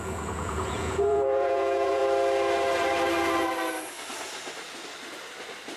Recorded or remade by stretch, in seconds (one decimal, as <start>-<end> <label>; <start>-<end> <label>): 0.0-2.0 remade; 2.0-5.8 recorded